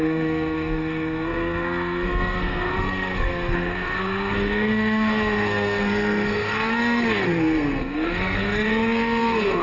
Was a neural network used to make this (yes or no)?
yes